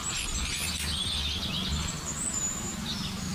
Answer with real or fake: real